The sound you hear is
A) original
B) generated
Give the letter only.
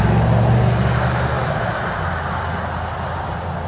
A